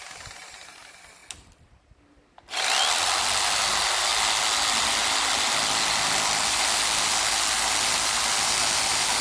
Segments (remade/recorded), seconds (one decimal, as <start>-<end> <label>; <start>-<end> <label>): 0.0-1.2 remade; 1.2-2.9 recorded; 2.9-4.1 remade; 4.1-4.8 recorded; 4.8-9.2 remade